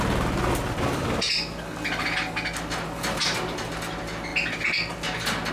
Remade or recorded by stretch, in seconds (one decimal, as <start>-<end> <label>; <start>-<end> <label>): 0.0-5.5 recorded